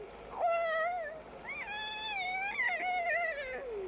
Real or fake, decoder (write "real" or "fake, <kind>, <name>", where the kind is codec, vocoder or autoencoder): real